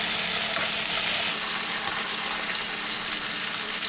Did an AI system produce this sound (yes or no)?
no